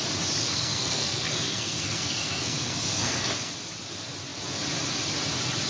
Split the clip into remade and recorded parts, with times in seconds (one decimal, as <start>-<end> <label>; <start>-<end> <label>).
0.0-0.4 recorded; 0.4-3.5 remade; 3.5-5.7 recorded